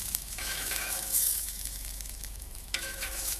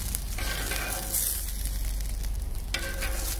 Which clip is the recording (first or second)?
second